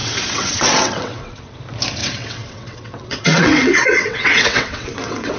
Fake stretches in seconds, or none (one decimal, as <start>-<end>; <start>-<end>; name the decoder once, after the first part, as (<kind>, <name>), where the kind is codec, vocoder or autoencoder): 0.0-1.6 (vocoder, WaveNeXt); 2.0-5.4